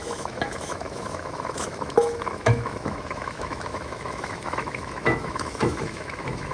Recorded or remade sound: remade